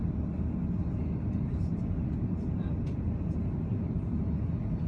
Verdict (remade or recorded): recorded